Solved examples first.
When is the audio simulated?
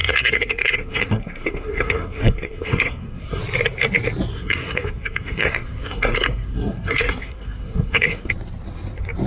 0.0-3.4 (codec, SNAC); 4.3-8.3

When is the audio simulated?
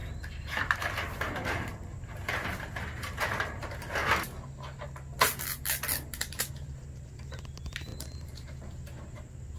0.0-4.0 (vocoder, BigVGAN v2); 6.5-9.6